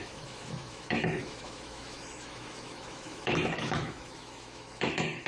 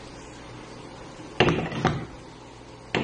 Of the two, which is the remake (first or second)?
first